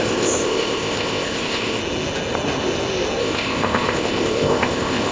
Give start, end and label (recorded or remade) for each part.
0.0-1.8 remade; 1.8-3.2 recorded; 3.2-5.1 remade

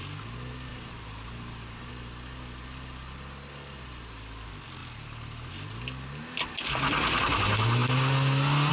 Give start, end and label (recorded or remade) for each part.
0.0-0.7 recorded; 0.7-1.9 remade; 1.9-8.7 recorded

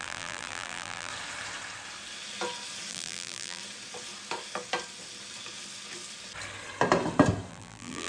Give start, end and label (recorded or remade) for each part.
0.0-1.1 remade; 1.1-2.9 recorded; 2.9-3.6 remade; 3.6-7.5 recorded; 7.5-8.1 remade